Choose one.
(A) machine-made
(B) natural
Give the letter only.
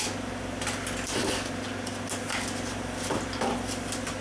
B